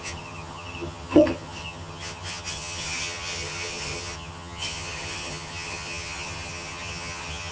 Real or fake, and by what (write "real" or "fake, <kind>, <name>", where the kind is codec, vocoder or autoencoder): fake, vocoder, HiFi-GAN